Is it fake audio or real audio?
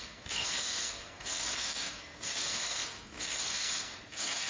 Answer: fake